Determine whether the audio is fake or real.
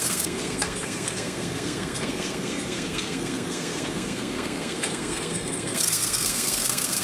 fake